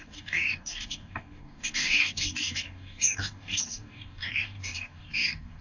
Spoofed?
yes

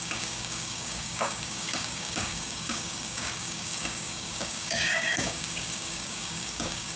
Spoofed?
yes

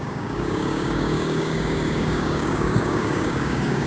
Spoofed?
yes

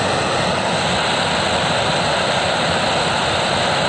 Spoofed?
no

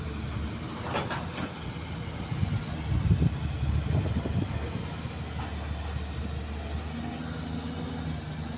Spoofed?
no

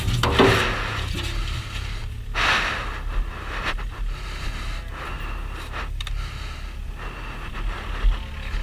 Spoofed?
no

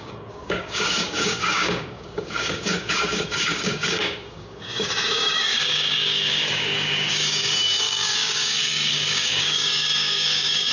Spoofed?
yes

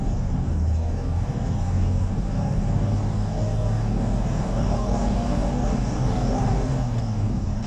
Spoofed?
yes